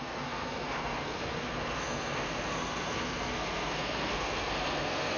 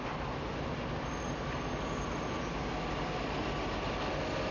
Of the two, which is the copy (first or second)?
first